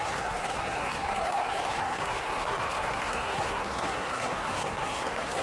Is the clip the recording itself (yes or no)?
no